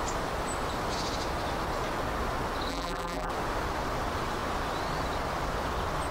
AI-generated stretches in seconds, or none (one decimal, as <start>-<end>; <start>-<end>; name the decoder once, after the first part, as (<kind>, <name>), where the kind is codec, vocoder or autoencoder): 2.7-3.3 (vocoder, BigVGAN v2)